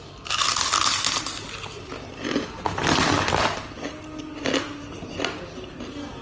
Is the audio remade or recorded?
recorded